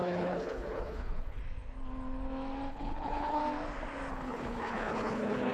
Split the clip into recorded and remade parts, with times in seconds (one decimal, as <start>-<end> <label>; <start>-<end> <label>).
0.0-1.4 remade; 1.4-2.7 recorded; 2.7-3.4 remade; 3.4-4.1 recorded; 4.1-5.5 remade